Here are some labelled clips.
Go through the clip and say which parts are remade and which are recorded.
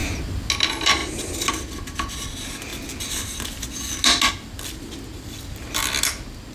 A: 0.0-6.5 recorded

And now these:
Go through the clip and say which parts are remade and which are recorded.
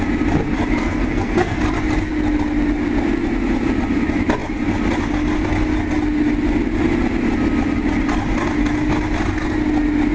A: 0.0-0.8 recorded; 0.8-1.6 remade; 1.6-10.1 recorded